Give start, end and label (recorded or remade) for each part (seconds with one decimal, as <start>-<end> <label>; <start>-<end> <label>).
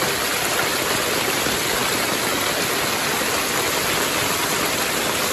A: 0.0-5.3 recorded